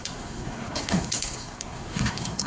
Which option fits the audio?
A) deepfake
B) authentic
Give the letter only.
A